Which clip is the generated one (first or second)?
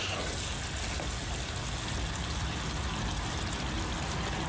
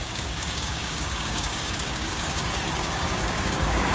second